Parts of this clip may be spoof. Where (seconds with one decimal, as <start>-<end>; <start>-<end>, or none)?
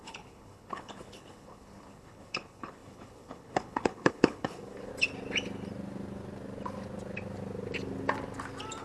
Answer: 0.0-4.9